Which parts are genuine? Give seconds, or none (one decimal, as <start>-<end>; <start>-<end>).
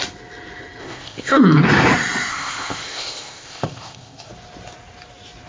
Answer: 0.0-0.8; 1.4-2.3; 4.3-5.5